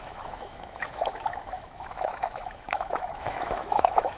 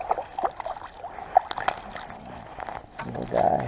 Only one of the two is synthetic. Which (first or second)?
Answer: first